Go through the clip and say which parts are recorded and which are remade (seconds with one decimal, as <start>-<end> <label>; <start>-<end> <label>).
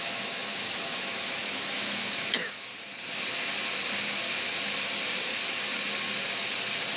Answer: 0.0-2.7 remade; 2.7-7.0 recorded